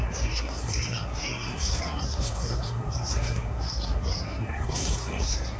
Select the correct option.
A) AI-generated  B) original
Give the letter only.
A